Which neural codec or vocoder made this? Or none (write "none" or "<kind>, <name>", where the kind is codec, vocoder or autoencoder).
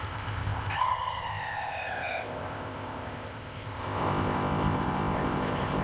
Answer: codec, ZipCodec